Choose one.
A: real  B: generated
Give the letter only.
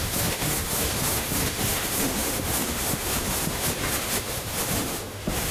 B